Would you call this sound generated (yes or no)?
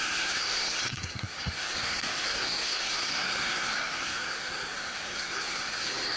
yes